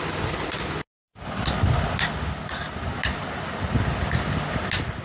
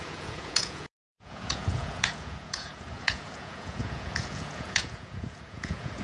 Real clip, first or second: first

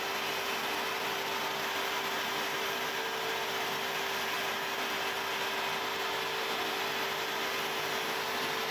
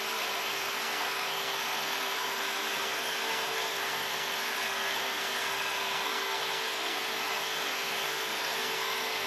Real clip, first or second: first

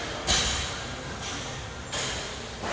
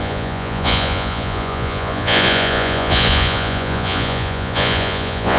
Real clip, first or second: first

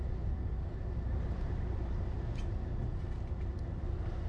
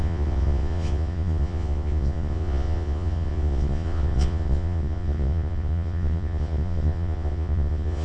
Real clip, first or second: first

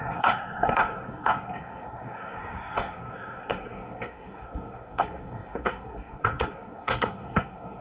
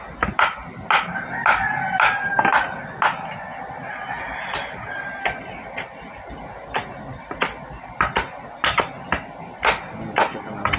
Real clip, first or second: second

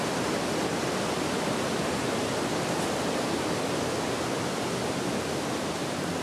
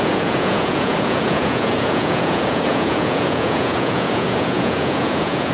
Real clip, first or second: first